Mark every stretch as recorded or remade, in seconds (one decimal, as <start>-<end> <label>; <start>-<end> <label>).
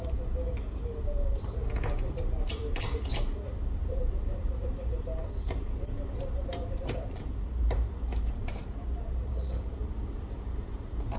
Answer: 0.0-1.6 remade; 1.6-2.5 recorded; 2.5-3.1 remade; 3.1-3.8 recorded; 3.8-11.2 remade